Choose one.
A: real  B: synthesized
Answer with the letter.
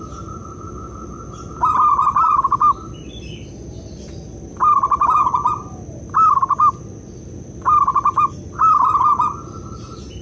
A